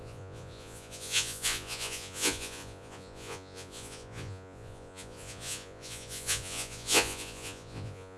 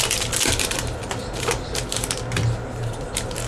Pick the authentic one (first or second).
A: second